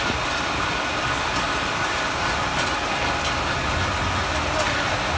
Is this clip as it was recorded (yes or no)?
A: yes